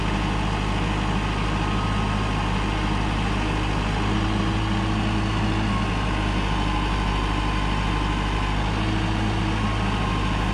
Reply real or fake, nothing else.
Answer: real